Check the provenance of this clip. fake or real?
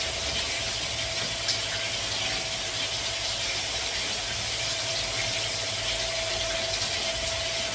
real